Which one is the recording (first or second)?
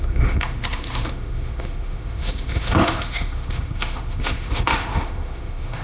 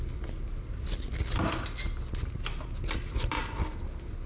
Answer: second